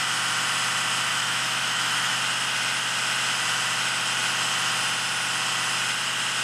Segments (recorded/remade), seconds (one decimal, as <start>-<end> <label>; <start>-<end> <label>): 0.0-1.1 recorded; 1.1-2.1 remade; 2.1-6.4 recorded